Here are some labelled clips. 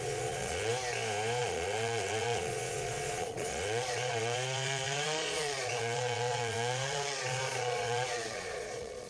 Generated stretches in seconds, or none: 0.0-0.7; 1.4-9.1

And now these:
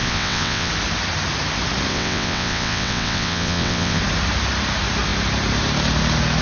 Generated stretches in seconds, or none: 0.0-0.7; 1.9-4.0

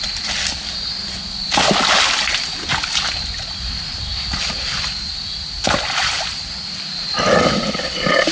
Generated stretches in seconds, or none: none

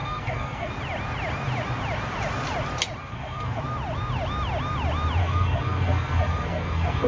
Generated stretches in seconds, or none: 0.0-0.7; 3.0-3.6; 5.2-7.1

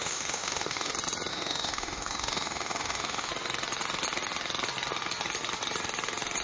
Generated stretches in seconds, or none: 0.0-0.9; 1.3-3.3